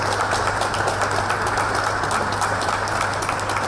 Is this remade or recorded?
recorded